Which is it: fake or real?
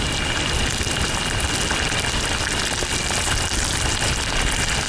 real